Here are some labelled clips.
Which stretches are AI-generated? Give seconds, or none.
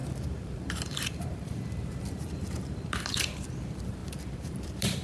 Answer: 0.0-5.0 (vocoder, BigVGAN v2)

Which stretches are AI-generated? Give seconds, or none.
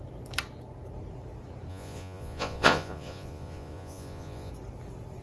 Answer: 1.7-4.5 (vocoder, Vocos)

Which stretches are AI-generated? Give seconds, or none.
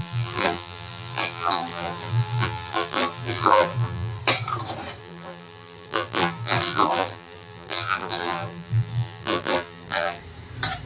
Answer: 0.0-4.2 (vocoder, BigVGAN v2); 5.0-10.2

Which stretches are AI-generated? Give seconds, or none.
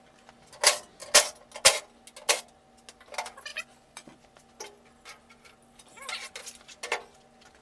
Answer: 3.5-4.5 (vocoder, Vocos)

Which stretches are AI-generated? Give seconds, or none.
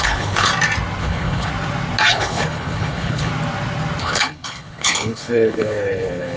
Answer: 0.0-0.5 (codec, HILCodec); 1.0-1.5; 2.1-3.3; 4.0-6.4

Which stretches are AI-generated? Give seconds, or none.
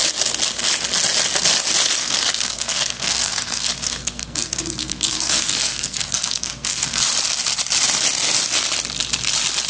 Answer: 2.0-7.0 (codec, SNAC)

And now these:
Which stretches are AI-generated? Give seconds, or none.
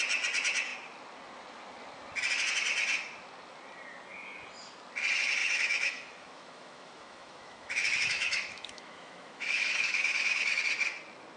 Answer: 5.4-10.6 (autoencoder, DAC-VAE)